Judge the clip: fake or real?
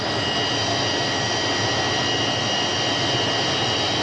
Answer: real